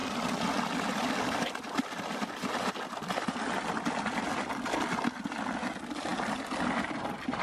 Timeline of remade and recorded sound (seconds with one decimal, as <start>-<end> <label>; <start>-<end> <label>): 0.0-7.4 recorded